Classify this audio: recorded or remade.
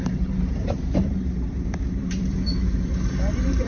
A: remade